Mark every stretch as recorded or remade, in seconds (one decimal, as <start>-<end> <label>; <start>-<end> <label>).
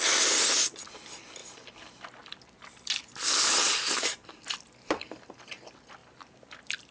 0.0-1.4 recorded; 1.4-5.5 remade; 5.5-6.0 recorded; 6.0-6.9 remade